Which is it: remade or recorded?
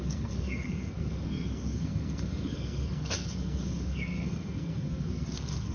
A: remade